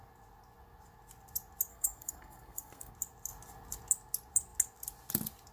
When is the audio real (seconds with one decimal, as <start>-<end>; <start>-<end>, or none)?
0.0-1.7; 2.9-5.5